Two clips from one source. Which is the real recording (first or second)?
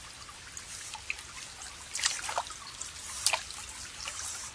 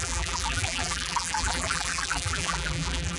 first